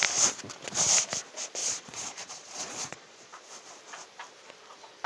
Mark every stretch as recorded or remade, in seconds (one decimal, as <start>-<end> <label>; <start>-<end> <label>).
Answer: 0.0-1.6 recorded; 1.6-3.7 remade; 3.7-5.1 recorded